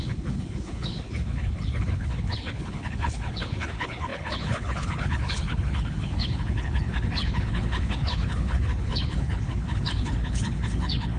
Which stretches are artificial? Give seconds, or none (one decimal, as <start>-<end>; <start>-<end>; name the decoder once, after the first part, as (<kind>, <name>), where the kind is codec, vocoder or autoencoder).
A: 0.0-11.2 (codec, HILCodec)